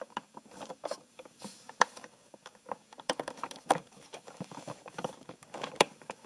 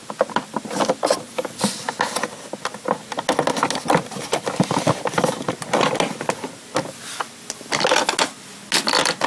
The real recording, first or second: second